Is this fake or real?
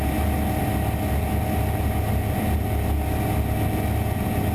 real